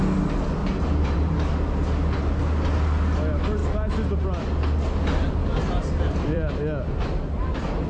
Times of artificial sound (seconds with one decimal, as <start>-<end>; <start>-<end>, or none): 0.6-1.3; 5.4-7.5